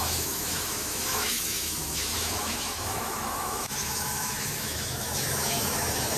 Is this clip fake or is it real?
fake